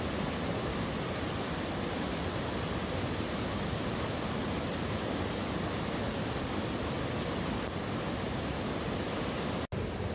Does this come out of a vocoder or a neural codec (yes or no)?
no